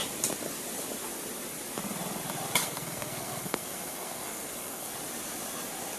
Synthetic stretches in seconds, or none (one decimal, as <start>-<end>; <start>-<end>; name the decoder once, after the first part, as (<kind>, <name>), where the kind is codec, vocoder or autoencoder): 2.6-4.9 (codec, SNAC)